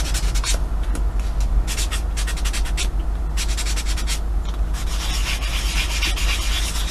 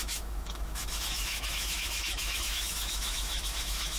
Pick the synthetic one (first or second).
second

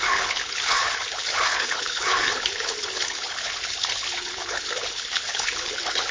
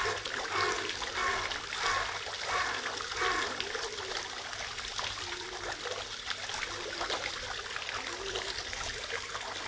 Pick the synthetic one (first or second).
first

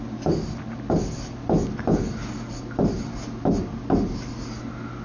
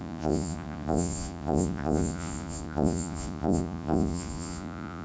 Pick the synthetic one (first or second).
second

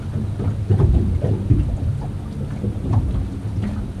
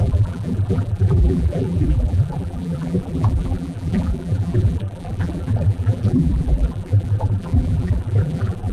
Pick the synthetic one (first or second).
second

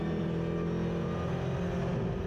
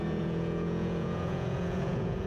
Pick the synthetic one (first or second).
second